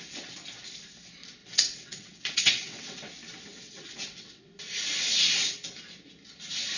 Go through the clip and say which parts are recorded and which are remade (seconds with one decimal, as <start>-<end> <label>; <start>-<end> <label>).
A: 0.0-1.4 recorded; 1.4-3.1 remade; 3.1-3.5 recorded; 3.5-4.5 remade; 4.5-6.8 recorded